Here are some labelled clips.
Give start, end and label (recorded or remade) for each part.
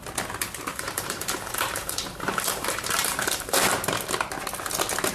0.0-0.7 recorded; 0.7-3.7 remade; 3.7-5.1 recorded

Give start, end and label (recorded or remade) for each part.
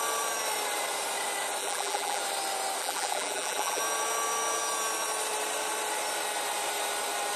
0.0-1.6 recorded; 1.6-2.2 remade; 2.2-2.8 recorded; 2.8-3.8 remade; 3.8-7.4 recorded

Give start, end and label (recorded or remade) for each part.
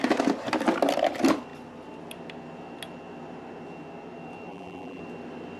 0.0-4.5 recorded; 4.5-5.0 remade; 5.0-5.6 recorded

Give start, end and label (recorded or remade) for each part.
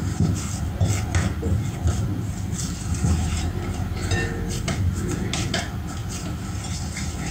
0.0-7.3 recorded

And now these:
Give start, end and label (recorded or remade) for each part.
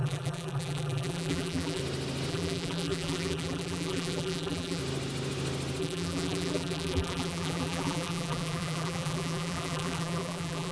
0.0-1.8 remade; 1.8-2.3 recorded; 2.3-4.8 remade; 4.8-5.8 recorded; 5.8-10.7 remade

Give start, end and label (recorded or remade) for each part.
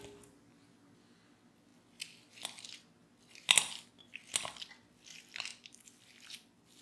0.0-5.5 recorded; 5.5-6.8 remade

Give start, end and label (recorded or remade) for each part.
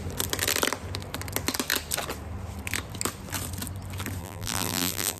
0.0-4.2 recorded; 4.2-5.2 remade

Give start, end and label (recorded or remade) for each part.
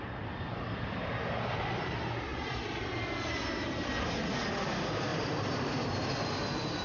0.0-5.1 recorded; 5.1-6.1 remade; 6.1-6.8 recorded